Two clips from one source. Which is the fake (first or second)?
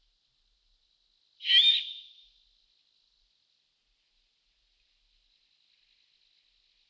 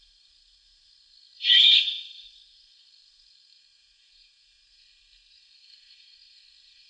second